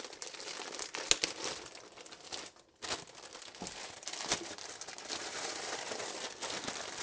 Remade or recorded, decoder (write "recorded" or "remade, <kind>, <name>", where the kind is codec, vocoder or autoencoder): recorded